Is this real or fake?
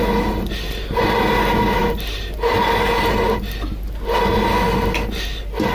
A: real